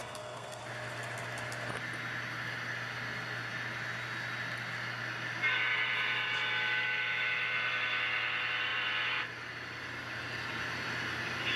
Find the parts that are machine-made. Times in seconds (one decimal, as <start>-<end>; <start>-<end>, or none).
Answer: 0.0-0.6